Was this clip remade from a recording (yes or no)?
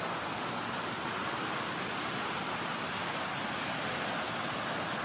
no